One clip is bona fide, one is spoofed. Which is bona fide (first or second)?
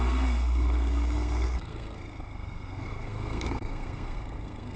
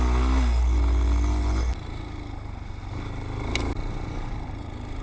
second